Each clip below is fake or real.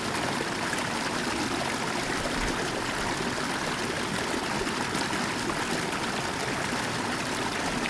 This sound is real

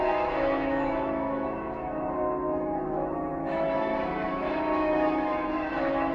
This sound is fake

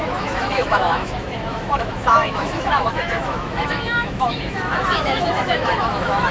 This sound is fake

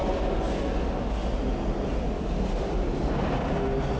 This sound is real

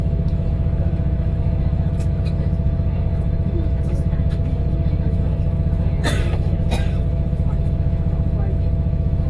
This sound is fake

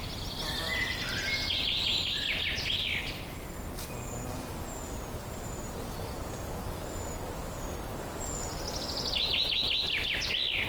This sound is real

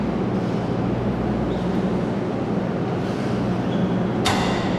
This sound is real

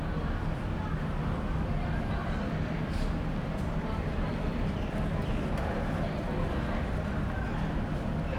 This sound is real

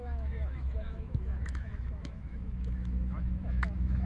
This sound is fake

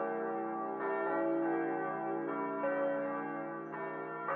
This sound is real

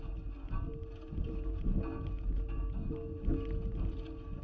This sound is real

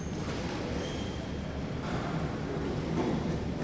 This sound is real